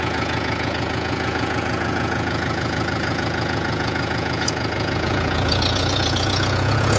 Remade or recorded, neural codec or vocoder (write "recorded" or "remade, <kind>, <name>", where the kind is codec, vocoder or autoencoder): remade, vocoder, Vocos